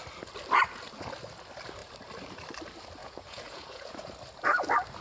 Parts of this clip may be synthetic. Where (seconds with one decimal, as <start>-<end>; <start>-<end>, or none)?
3.0-4.1